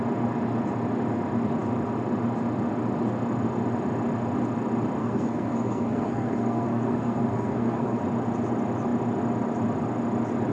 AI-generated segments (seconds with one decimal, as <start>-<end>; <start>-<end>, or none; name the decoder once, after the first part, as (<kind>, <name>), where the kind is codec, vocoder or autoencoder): 5.0-8.0 (codec, SNAC)